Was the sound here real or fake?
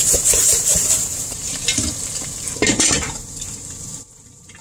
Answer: fake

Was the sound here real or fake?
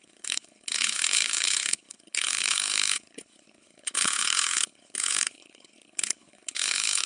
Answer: fake